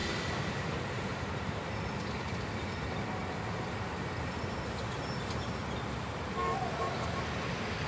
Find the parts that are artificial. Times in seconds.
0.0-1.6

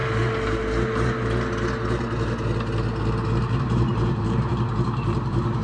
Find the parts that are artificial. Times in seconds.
3.4-5.6